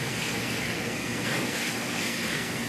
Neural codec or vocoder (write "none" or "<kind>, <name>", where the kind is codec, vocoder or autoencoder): codec, SNAC